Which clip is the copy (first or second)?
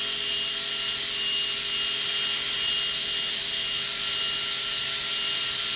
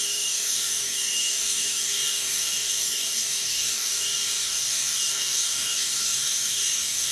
second